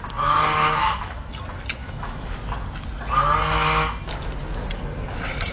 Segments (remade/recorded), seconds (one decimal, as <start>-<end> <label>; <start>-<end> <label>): 0.0-0.6 recorded; 0.6-1.3 remade; 1.3-1.8 recorded; 1.8-2.4 remade; 2.4-5.5 recorded